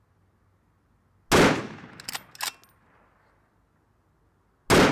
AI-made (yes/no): no